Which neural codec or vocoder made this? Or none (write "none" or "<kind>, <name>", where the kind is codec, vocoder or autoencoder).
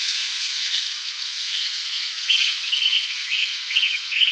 codec, SNAC